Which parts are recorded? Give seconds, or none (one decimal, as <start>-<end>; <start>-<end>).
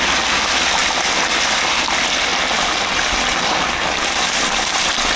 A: 0.0-5.2